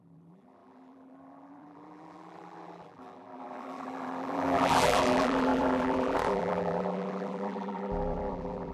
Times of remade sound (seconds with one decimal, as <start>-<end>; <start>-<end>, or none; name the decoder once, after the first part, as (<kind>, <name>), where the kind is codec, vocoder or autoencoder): 0.0-8.7 (vocoder, BigVGAN v2)